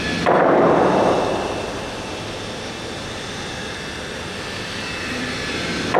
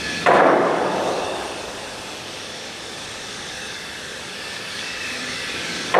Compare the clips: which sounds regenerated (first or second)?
second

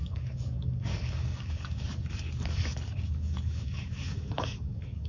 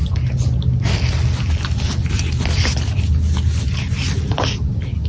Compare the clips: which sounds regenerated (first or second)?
first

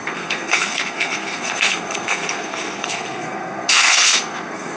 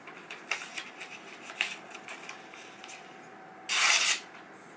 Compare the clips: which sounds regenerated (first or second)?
first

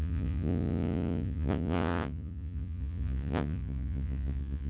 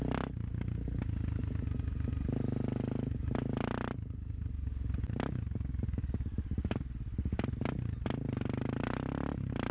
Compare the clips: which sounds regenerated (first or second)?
first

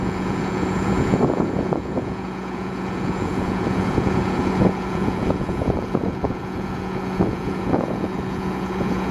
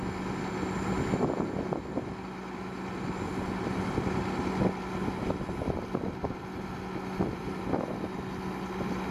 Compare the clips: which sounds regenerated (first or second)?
first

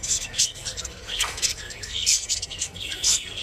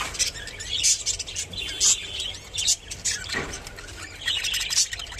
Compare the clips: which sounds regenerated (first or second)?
first